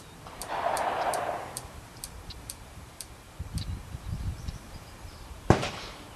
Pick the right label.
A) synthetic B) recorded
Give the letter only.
A